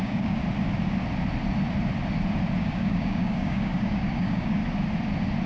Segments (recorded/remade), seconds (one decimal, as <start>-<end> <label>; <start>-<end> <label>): 0.0-0.4 remade; 0.4-2.6 recorded; 2.6-4.6 remade; 4.6-5.5 recorded